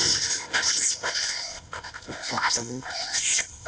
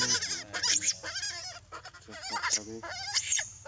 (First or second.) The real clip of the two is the second